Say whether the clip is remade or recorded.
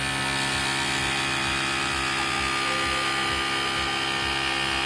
recorded